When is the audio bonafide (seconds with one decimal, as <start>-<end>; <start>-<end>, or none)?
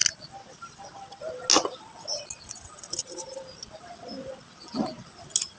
0.0-5.6